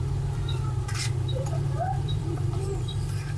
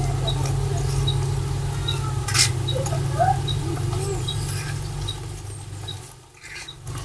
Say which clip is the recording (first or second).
second